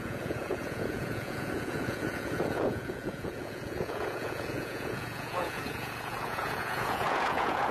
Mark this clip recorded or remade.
remade